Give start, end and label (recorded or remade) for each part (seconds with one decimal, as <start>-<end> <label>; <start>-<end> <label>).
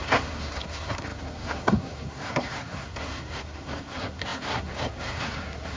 0.0-5.8 remade